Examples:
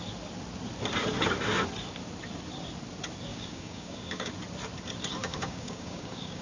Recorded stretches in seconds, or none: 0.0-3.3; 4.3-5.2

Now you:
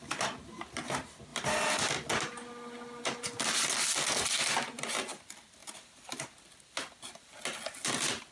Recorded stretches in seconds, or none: 0.0-8.3

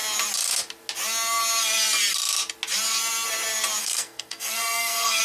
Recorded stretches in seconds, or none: 0.0-3.8

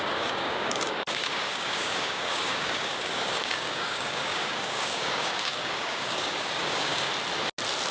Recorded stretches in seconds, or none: 7.1-7.9

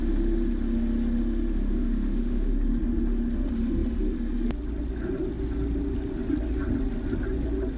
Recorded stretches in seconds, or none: 0.0-1.7; 2.5-7.8

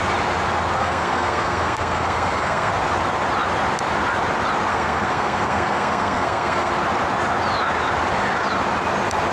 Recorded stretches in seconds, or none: 0.0-0.8; 2.7-4.7; 6.7-9.3

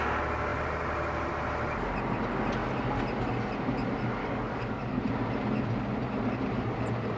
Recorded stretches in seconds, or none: 0.0-4.2; 5.0-7.2

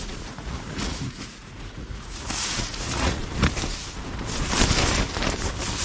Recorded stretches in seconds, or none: 3.2-5.8